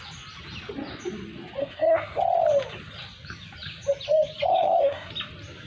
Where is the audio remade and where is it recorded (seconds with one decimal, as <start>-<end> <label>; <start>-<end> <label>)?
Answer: 0.0-1.6 recorded; 1.6-2.2 remade; 2.2-4.5 recorded; 4.5-5.1 remade; 5.1-5.7 recorded